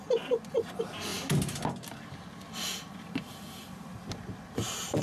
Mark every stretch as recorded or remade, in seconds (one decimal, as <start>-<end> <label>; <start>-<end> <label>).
0.0-5.0 recorded